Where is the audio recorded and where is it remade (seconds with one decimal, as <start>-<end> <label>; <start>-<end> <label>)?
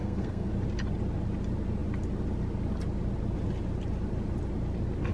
0.0-0.5 remade; 0.5-5.1 recorded